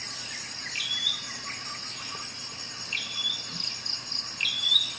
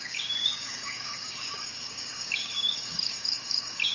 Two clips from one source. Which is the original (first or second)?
first